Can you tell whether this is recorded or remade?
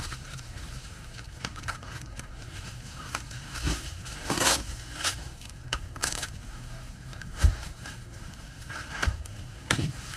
remade